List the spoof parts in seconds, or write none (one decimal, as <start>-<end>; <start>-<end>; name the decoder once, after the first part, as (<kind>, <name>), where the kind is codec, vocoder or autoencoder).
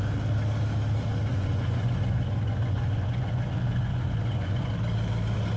1.3-4.7 (vocoder, Vocos)